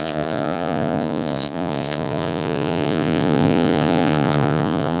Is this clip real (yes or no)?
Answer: no